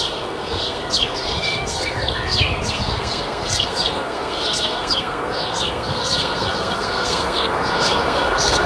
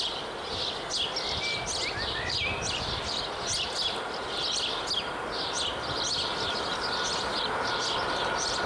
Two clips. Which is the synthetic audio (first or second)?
first